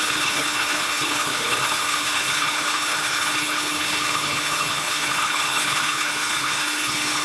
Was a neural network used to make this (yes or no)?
yes